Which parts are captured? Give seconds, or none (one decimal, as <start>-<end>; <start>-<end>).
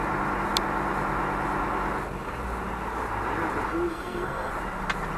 0.0-3.9; 4.5-5.2